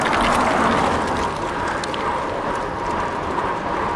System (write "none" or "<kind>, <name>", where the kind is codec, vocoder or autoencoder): none